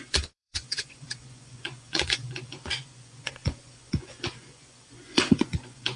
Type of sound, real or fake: fake